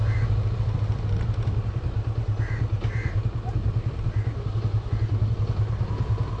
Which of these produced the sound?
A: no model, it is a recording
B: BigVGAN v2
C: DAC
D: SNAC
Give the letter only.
A